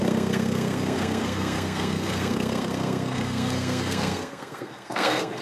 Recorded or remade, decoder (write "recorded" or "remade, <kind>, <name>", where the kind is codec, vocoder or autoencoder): remade, codec, SNAC